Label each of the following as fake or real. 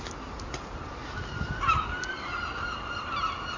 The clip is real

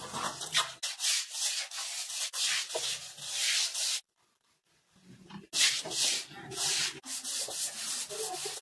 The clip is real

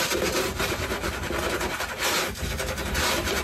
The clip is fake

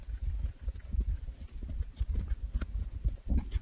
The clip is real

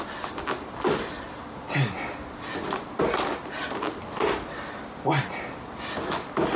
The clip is real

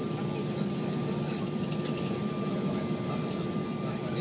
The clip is fake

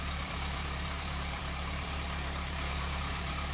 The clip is fake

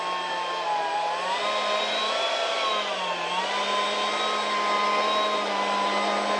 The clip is real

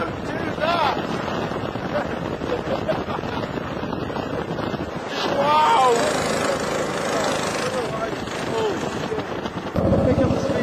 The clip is real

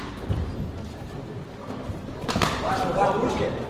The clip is fake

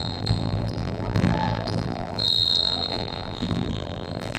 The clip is fake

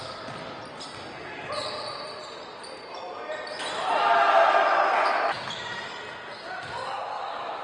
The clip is real